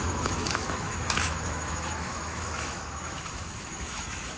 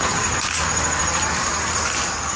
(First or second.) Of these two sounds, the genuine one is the second